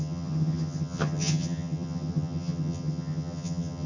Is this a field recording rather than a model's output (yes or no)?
no